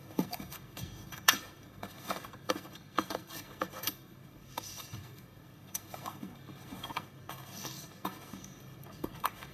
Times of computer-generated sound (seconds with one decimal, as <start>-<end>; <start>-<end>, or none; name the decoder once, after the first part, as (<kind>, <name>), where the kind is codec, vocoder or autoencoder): 0.0-9.5 (codec, SNAC)